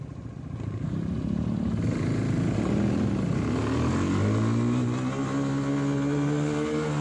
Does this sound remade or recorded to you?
recorded